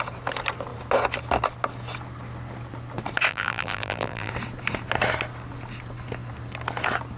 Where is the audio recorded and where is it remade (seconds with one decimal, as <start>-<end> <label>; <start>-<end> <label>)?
0.0-3.3 recorded; 3.3-4.3 remade; 4.3-7.2 recorded